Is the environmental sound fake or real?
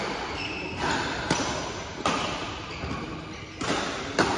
real